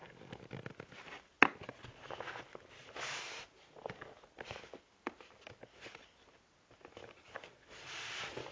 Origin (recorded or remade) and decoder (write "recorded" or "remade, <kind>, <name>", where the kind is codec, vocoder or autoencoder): recorded